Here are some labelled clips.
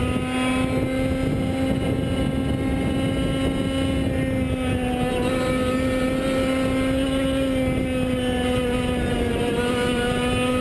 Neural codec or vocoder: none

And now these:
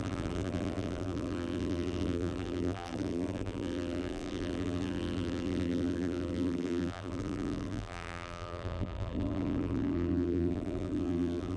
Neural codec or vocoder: vocoder, BigVGAN v2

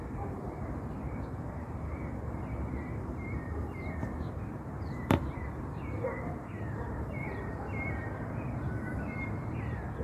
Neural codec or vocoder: vocoder, BigVGAN v2